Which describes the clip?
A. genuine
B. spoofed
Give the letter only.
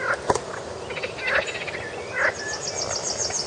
A